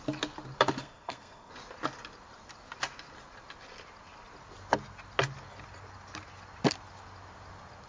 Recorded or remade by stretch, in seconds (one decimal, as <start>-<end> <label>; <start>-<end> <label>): 0.0-0.8 recorded; 0.8-1.5 remade; 1.5-7.9 recorded